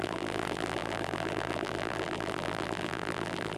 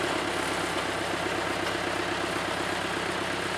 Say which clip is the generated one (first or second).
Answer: first